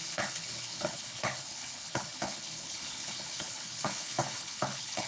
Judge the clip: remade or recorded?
remade